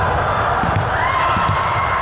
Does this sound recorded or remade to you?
recorded